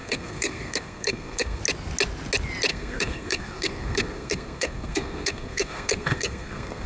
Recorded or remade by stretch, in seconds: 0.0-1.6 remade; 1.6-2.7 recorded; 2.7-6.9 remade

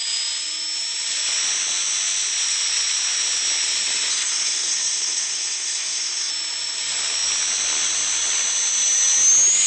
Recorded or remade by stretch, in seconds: 0.0-4.1 recorded; 4.1-6.3 remade; 6.3-9.7 recorded

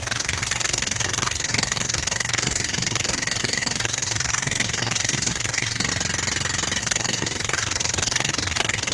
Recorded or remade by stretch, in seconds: 0.0-5.9 remade; 5.9-6.8 recorded; 6.8-8.9 remade

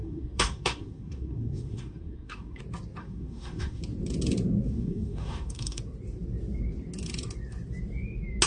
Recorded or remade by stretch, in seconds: 0.0-2.6 remade; 2.6-3.0 recorded; 3.0-3.8 remade; 3.8-4.7 recorded; 4.7-5.8 remade; 5.8-8.5 recorded

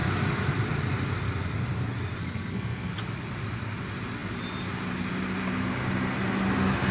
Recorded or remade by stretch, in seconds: 0.0-2.2 recorded; 2.2-2.9 remade; 2.9-6.9 recorded

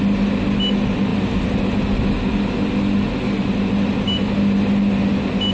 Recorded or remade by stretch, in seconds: 0.0-5.5 recorded